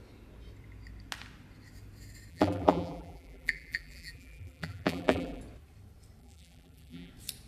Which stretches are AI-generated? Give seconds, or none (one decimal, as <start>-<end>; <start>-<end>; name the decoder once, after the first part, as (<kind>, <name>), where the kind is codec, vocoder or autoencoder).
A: 2.3-5.4 (vocoder, BigVGAN v2); 6.2-7.1